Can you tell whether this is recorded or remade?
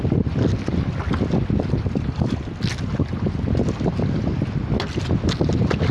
recorded